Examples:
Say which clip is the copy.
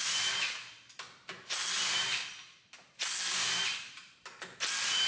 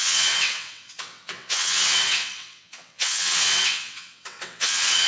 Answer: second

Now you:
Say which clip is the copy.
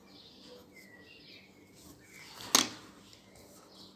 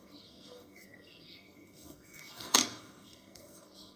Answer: second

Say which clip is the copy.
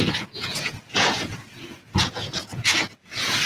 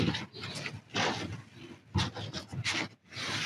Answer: first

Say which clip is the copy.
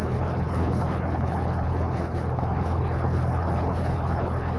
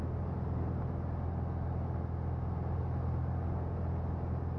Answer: first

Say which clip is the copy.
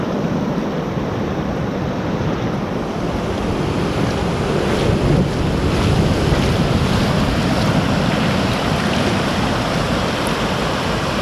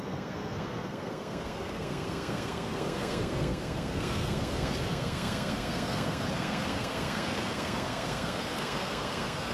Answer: second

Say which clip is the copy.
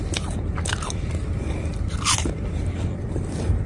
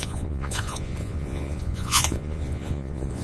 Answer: second